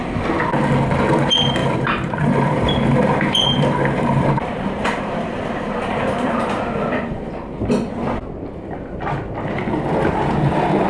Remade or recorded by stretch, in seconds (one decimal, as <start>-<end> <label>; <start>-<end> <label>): 0.0-1.6 recorded; 1.6-6.6 remade; 6.6-10.9 recorded